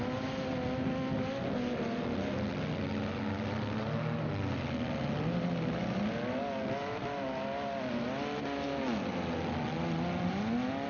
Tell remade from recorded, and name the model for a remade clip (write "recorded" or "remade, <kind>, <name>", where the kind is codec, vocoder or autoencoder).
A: recorded